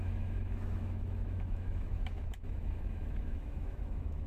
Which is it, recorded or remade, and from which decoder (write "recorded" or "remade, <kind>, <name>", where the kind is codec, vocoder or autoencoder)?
remade, autoencoder, DAC-VAE